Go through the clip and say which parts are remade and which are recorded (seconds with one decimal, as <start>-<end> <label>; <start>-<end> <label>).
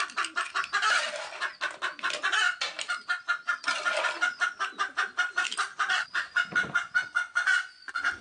0.0-5.7 recorded; 5.7-8.2 remade